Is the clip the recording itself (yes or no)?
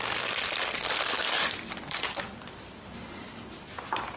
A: yes